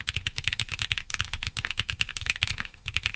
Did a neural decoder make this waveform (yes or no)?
yes